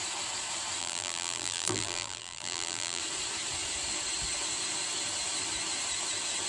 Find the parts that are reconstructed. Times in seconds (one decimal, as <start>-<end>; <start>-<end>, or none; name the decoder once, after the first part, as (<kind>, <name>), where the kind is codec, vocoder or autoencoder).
0.8-3.0 (vocoder, BigVGAN v2)